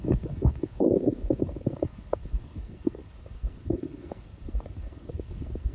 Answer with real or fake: fake